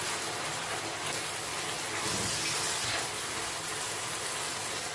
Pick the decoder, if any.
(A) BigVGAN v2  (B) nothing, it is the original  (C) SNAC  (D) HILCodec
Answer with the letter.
B